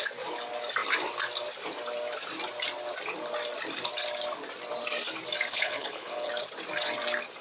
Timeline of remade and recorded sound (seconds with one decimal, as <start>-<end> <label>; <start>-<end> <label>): 0.0-5.5 recorded; 5.5-6.3 remade; 6.3-7.4 recorded